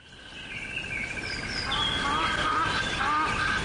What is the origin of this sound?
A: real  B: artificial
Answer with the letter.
A